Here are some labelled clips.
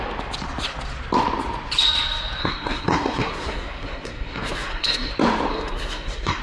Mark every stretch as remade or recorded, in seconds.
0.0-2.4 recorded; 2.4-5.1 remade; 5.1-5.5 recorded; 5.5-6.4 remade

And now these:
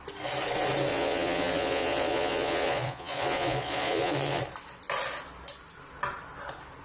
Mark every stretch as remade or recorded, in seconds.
0.0-0.9 recorded; 0.9-4.4 remade; 4.4-6.8 recorded

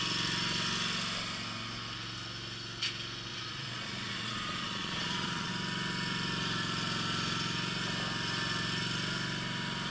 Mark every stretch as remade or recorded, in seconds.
0.0-3.3 recorded; 3.3-5.5 remade; 5.5-9.9 recorded

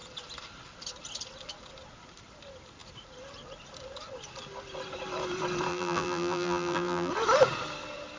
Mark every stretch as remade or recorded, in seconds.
0.0-5.7 recorded; 5.7-7.1 remade; 7.1-8.2 recorded